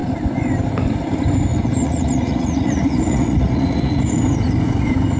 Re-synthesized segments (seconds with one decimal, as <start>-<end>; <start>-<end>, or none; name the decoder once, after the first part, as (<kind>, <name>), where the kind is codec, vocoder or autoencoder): 1.5-4.2 (vocoder, Vocos)